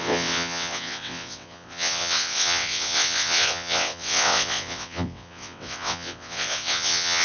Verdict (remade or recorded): remade